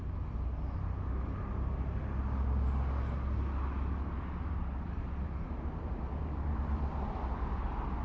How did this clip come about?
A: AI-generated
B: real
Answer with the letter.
B